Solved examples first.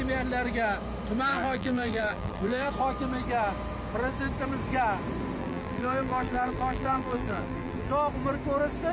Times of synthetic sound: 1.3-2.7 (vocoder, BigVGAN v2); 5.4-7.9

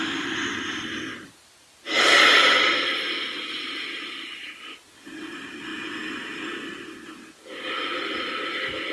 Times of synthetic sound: none

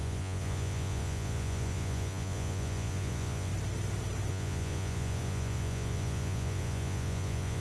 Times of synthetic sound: 0.0-3.5 (vocoder, Vocos); 4.3-7.6

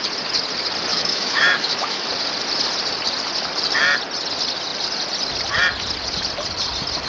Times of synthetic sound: 0.9-2.1 (autoencoder, DAC-VAE)

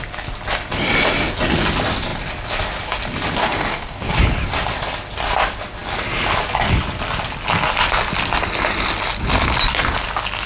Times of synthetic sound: 3.4-4.1 (codec, DAC)

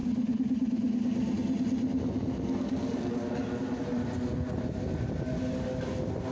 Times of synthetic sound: none

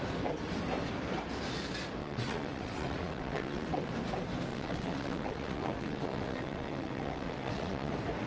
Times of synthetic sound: 2.0-3.9 (vocoder, WaveNeXt); 4.5-7.9

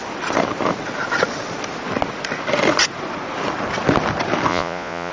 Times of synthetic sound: 4.5-5.1 (vocoder, Vocos)